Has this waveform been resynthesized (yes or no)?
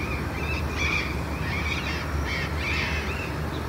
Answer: no